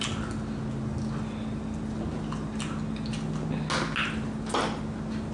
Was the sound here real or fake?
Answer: real